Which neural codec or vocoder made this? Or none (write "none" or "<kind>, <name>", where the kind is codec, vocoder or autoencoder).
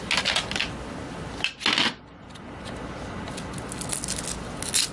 none